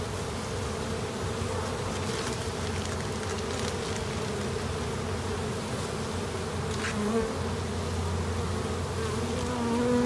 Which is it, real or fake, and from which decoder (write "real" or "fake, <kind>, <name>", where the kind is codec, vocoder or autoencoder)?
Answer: real